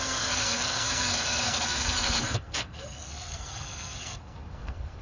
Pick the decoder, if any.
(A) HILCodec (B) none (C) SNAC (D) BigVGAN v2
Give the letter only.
C